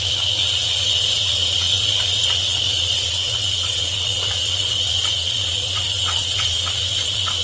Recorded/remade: remade